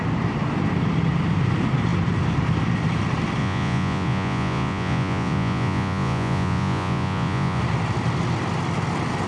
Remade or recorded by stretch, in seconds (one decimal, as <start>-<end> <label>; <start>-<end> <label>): 0.0-3.4 recorded; 3.4-7.6 remade; 7.6-9.3 recorded